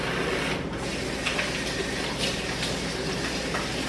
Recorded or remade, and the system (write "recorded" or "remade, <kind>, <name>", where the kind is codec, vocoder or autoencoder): remade, vocoder, BigVGAN v2